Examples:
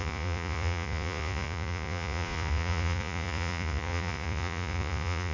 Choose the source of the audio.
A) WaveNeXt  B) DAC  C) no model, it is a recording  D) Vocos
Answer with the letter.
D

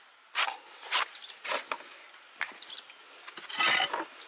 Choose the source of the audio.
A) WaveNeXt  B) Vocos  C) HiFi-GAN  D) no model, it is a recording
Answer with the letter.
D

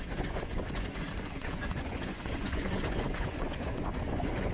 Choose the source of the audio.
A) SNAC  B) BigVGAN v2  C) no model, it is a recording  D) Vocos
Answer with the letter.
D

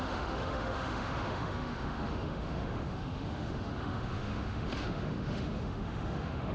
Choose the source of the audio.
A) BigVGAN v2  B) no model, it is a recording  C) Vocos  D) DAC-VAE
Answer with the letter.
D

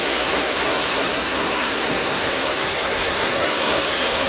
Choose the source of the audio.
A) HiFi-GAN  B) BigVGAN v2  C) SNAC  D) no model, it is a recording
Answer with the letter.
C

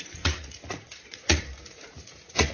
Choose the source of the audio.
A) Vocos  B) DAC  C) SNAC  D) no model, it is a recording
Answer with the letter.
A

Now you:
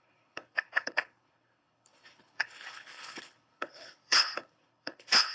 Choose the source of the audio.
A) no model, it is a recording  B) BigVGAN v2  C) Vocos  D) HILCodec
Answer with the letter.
D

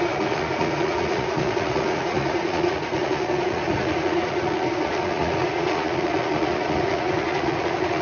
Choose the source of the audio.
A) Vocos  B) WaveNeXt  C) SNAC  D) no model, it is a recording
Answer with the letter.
A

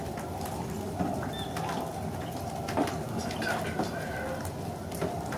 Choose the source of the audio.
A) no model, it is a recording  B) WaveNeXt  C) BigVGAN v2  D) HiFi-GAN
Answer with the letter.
A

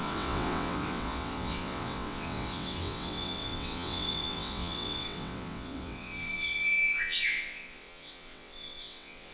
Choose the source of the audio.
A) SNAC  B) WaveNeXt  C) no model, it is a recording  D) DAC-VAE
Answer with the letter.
B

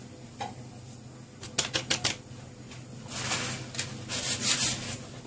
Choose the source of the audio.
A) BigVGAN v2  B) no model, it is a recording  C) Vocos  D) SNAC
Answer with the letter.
B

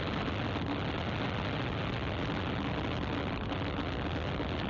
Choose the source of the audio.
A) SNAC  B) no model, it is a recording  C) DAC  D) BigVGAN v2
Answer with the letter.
B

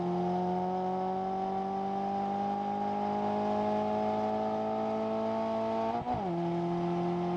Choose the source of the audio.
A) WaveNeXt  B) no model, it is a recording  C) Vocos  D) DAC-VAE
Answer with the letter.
B